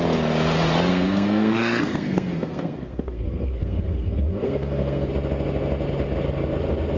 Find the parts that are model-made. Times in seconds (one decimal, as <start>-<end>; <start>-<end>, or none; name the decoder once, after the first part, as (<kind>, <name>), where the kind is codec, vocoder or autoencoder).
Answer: 0.9-5.1 (codec, SNAC)